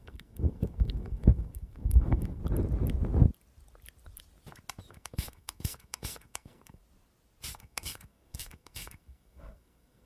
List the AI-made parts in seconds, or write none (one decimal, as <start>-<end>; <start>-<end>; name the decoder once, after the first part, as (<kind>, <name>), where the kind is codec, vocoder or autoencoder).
0.0-2.4 (codec, SNAC); 4.9-6.8; 7.5-10.1